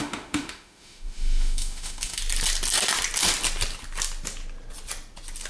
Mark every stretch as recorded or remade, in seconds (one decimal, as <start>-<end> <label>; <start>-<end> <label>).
0.0-2.2 remade; 2.2-5.5 recorded